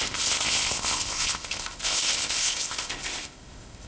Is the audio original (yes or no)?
no